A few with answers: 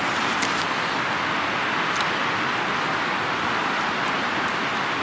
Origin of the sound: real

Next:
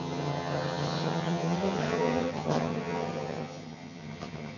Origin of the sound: fake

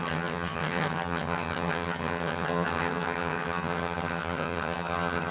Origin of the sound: fake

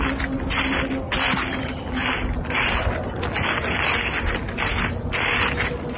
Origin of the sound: real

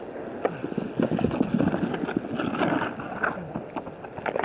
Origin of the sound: real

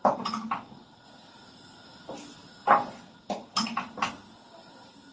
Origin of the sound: real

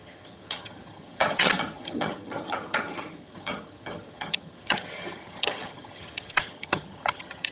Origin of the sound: fake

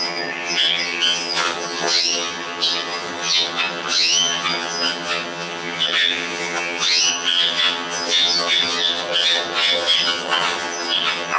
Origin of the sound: fake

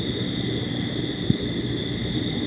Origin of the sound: real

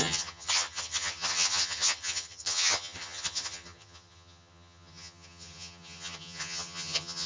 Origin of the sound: fake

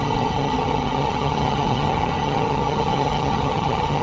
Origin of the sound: fake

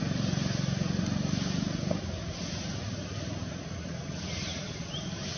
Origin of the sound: real